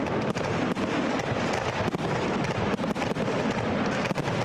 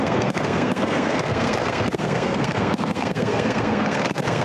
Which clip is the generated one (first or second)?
second